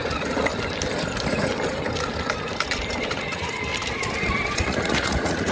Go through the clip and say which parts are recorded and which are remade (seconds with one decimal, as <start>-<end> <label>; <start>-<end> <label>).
0.0-0.5 remade; 0.5-3.1 recorded; 3.1-3.7 remade; 3.7-4.5 recorded; 4.5-5.5 remade